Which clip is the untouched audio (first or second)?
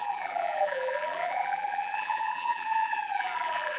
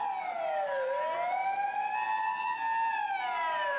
second